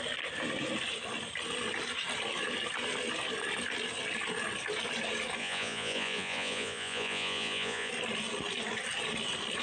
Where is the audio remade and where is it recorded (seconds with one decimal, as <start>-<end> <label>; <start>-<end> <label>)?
0.0-5.4 recorded; 5.4-7.9 remade; 7.9-9.6 recorded